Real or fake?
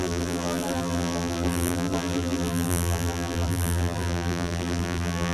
fake